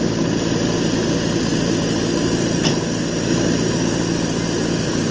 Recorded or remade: recorded